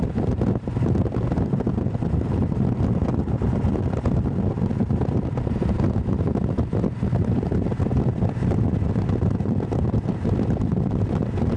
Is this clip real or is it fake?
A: fake